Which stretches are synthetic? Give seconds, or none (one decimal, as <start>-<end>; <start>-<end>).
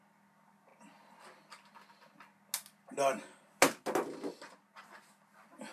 none